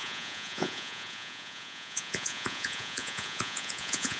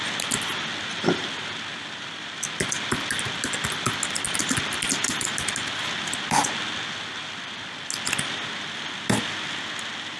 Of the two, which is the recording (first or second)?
second